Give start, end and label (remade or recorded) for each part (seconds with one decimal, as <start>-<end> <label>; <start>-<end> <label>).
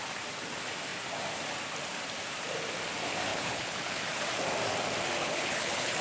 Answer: 0.0-3.3 recorded; 3.3-4.0 remade; 4.0-5.2 recorded; 5.2-6.0 remade